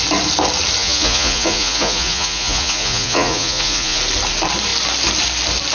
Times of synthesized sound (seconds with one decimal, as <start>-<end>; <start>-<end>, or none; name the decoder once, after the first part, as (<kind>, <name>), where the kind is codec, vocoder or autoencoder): 0.8-4.0 (vocoder, Vocos)